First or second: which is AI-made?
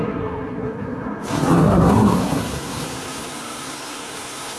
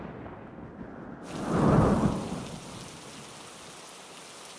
first